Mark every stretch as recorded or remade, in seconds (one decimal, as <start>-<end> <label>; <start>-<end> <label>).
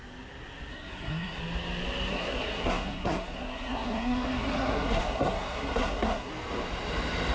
0.0-0.7 recorded; 0.7-1.4 remade; 1.4-2.1 recorded; 2.1-6.3 remade; 6.3-7.3 recorded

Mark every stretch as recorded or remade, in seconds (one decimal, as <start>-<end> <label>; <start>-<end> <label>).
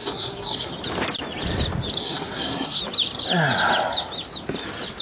0.0-0.7 remade; 0.7-2.0 recorded; 2.0-2.8 remade; 2.8-5.0 recorded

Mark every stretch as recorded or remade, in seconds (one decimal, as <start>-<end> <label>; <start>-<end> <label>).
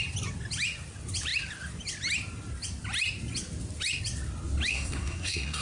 0.0-4.7 recorded; 4.7-5.6 remade